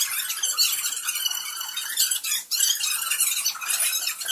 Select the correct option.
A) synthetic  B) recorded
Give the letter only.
B